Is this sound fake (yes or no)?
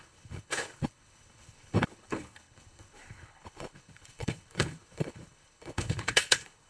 yes